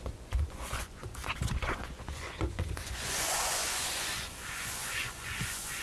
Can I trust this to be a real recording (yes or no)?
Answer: no